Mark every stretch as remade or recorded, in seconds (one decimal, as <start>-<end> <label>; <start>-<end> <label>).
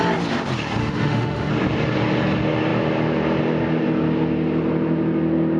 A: 0.0-0.8 recorded; 0.8-1.5 remade; 1.5-5.6 recorded